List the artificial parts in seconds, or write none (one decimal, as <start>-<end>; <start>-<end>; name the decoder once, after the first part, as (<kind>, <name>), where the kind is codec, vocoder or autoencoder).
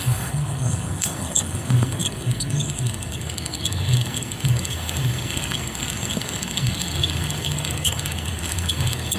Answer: 0.0-9.2 (codec, SNAC)